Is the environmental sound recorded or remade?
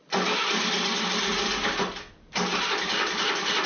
recorded